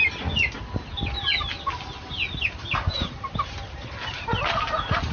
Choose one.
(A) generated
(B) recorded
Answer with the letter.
B